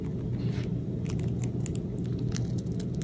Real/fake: real